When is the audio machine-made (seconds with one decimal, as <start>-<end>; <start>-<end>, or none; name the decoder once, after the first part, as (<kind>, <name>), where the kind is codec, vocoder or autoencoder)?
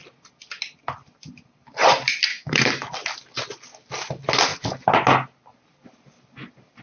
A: 2.3-2.9 (autoencoder, DAC-VAE)